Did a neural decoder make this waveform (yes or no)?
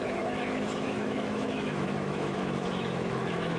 yes